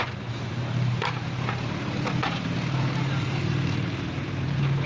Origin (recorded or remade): remade